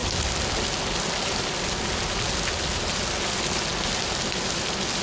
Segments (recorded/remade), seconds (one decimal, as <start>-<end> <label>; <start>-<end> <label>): 0.0-5.0 recorded